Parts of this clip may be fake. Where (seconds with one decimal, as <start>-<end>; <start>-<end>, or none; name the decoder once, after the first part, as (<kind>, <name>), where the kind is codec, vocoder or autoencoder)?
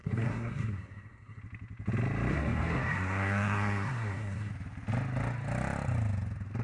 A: 0.0-1.4 (codec, SNAC); 2.3-4.5